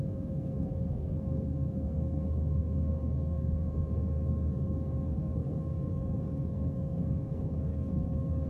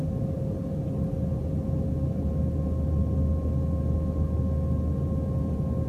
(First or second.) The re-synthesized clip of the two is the first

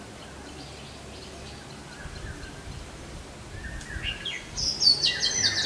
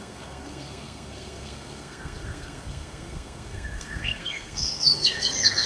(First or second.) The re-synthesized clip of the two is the second